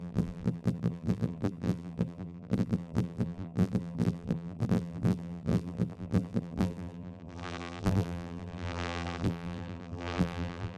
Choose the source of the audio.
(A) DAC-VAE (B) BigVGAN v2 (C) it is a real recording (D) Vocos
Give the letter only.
B